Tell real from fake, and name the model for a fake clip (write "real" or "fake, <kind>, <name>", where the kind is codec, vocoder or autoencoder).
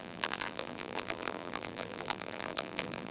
fake, vocoder, BigVGAN v2